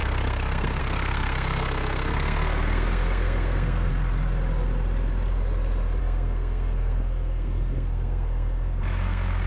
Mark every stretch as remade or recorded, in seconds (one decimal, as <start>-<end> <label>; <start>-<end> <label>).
0.0-3.9 remade; 3.9-6.0 recorded; 6.0-9.5 remade